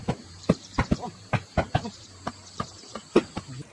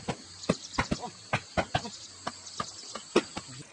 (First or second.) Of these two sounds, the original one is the second